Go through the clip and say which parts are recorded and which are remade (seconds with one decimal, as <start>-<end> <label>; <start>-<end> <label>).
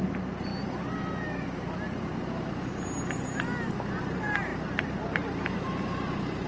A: 0.0-0.5 remade; 0.5-4.0 recorded; 4.0-4.5 remade; 4.5-5.4 recorded; 5.4-6.5 remade